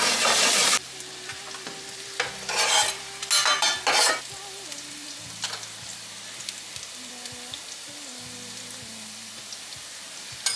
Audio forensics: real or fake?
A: real